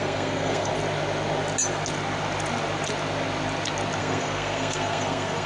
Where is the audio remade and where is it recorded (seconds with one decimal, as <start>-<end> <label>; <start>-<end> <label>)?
0.0-0.7 remade; 0.7-4.0 recorded; 4.0-5.5 remade